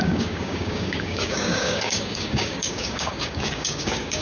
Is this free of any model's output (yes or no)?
no